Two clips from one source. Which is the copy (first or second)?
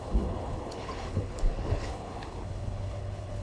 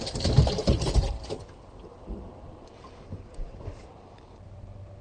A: first